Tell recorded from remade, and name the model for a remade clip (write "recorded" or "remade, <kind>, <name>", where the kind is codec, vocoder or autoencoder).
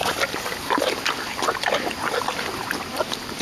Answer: recorded